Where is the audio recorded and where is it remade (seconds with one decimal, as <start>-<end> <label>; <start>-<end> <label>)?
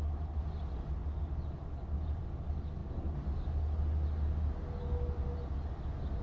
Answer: 0.0-6.2 recorded